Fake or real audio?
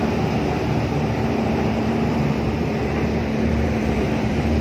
fake